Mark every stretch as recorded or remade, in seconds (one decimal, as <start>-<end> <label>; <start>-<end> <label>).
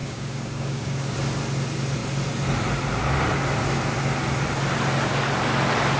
0.0-1.1 remade; 1.1-6.0 recorded